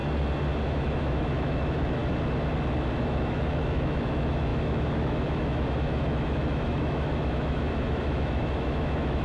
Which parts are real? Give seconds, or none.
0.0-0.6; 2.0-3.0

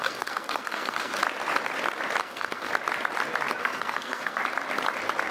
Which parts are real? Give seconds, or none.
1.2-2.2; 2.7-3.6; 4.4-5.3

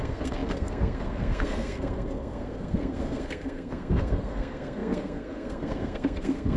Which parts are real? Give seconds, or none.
none

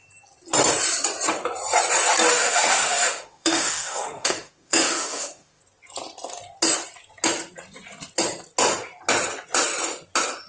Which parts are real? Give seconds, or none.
0.0-2.3; 5.6-10.5

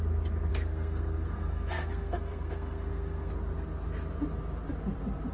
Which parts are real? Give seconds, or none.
0.0-0.5; 3.3-5.3